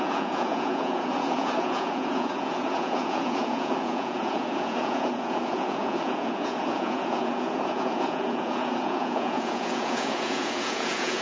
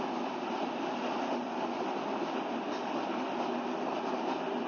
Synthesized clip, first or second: first